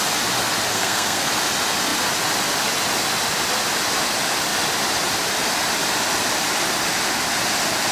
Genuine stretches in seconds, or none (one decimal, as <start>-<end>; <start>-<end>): 0.0-0.7; 1.3-7.9